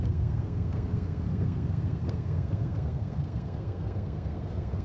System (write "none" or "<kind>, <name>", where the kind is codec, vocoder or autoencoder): codec, SNAC